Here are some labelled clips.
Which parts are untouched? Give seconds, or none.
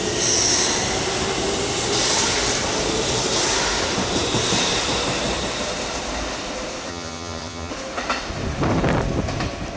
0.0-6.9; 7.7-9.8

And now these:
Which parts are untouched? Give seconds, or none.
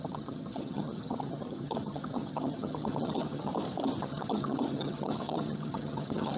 3.5-4.0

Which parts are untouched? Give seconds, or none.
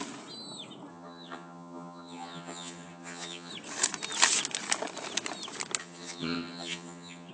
0.0-0.9; 3.5-5.8